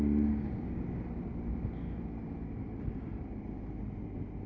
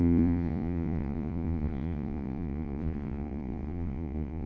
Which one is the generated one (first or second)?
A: second